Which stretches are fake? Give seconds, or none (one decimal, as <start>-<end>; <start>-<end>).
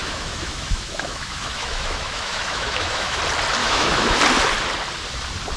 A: 0.0-3.2; 3.6-4.2